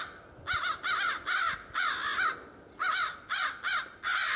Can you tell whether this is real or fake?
real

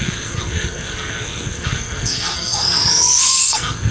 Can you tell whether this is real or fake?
fake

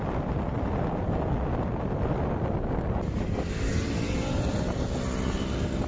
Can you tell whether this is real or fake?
real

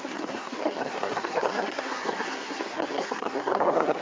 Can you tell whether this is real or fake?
fake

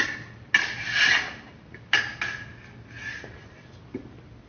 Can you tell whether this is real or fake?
real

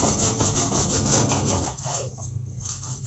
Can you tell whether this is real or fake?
fake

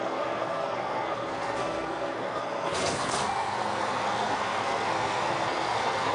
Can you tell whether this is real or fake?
fake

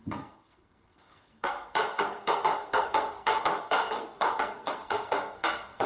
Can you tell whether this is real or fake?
fake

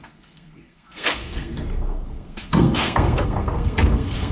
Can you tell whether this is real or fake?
fake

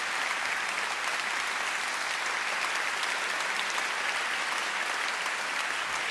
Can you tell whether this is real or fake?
real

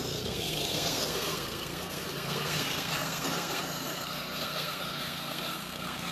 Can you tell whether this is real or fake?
fake